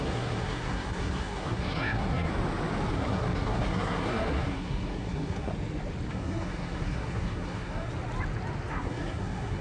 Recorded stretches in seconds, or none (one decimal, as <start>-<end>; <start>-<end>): 2.3-2.9; 5.5-6.1; 7.9-8.7